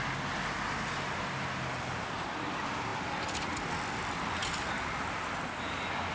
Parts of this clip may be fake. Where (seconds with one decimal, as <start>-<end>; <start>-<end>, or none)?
none